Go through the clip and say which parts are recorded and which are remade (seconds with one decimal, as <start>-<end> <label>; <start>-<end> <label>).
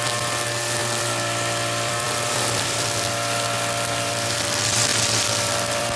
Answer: 0.0-0.8 recorded; 0.8-4.4 remade; 4.4-4.9 recorded; 4.9-6.0 remade